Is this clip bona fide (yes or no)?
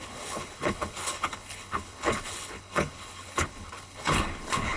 no